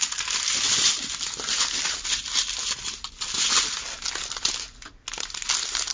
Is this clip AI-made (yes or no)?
no